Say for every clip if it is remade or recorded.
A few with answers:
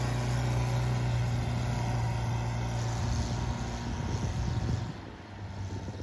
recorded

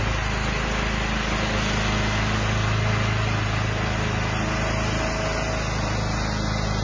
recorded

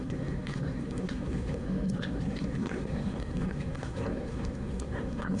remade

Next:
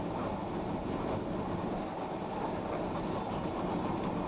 recorded